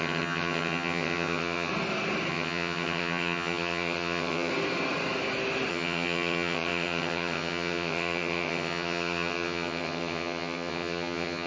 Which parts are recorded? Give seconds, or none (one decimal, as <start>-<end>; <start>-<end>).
1.7-2.3; 4.5-5.7